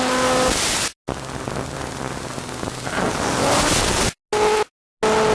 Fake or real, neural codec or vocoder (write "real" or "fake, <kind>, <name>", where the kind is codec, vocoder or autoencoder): real